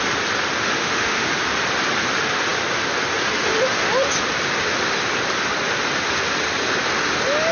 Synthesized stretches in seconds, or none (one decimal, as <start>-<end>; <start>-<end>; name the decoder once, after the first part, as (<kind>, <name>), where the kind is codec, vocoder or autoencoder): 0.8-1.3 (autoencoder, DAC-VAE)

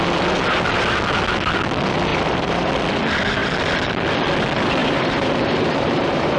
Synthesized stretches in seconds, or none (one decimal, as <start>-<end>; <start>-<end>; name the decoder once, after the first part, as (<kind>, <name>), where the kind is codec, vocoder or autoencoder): 2.1-2.7 (vocoder, BigVGAN v2); 4.8-6.4

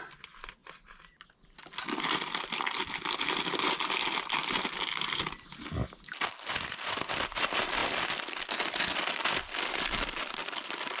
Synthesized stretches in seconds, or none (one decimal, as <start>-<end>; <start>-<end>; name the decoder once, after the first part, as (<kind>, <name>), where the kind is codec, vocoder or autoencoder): none

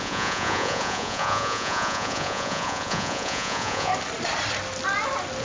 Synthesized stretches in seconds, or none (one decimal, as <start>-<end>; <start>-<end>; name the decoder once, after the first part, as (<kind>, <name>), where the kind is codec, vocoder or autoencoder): 0.0-3.9 (vocoder, Vocos)